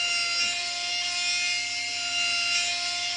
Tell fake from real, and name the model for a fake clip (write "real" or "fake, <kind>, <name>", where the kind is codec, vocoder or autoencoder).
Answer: real